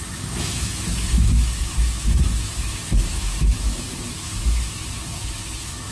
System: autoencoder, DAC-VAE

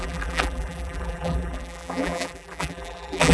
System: vocoder, BigVGAN v2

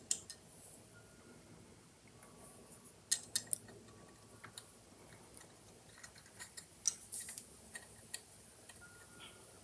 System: none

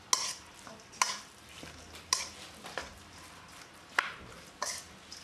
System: none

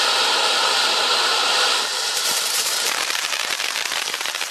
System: vocoder, BigVGAN v2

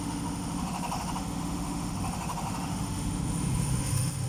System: autoencoder, DAC-VAE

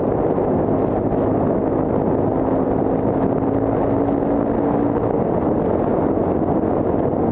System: none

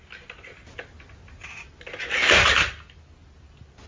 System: none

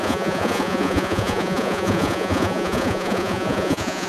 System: vocoder, Vocos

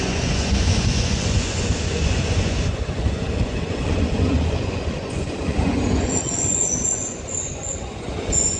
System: vocoder, Vocos